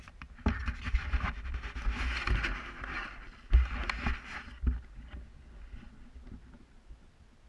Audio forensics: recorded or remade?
recorded